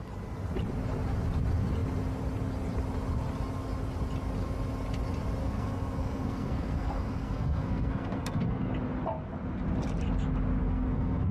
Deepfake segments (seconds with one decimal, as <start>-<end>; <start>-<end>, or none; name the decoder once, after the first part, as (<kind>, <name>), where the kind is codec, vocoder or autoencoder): 5.4-8.7 (codec, SNAC); 10.6-11.3

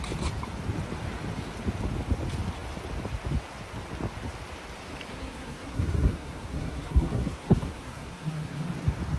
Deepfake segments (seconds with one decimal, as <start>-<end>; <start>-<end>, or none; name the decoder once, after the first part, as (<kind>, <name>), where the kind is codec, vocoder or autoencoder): 5.1-8.6 (codec, SNAC)

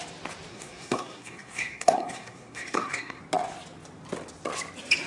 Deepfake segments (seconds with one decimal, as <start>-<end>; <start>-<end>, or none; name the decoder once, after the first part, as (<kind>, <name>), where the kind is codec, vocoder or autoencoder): 0.5-3.2 (codec, SNAC)

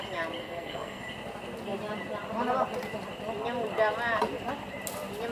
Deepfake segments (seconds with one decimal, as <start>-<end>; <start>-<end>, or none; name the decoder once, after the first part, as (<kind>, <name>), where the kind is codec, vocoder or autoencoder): 0.4-1.0 (codec, SNAC)

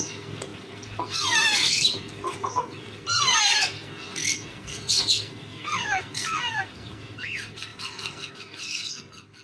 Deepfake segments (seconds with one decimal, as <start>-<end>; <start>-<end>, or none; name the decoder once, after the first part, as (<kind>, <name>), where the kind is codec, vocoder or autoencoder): 0.0-9.4 (codec, SNAC)

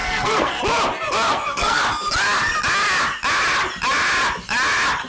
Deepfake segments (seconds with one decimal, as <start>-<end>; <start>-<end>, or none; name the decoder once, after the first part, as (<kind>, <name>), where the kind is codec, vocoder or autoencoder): 0.0-0.6 (codec, SNAC); 1.3-1.8